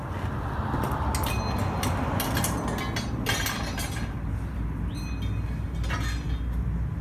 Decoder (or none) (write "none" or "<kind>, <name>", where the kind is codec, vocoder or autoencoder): none